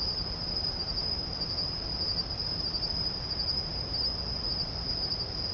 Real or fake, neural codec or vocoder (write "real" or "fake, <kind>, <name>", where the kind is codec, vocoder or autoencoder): fake, vocoder, BigVGAN v2